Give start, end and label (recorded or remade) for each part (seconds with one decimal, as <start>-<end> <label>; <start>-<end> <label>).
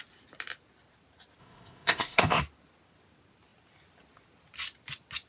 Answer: 0.0-1.4 recorded; 1.4-2.4 remade; 2.4-5.3 recorded